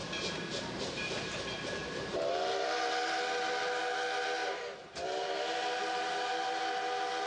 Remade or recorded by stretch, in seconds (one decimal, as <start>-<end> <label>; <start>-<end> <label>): 0.0-1.4 remade; 1.4-1.8 recorded; 1.8-3.8 remade; 3.8-4.4 recorded; 4.4-6.6 remade; 6.6-7.3 recorded